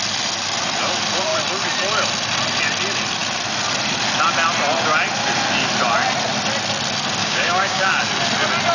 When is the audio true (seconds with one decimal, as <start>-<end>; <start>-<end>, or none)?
0.0-7.2; 7.9-8.7